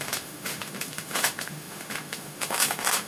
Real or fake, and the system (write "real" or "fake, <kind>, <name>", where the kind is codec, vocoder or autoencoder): fake, autoencoder, DAC-VAE